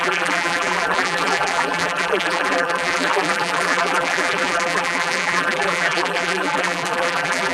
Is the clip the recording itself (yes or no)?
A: no